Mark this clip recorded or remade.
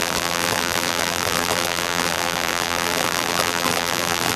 remade